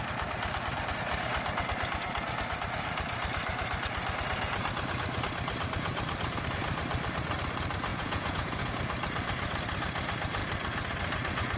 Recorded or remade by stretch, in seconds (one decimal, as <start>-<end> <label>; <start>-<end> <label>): 0.0-7.9 recorded; 7.9-8.7 remade; 8.7-11.6 recorded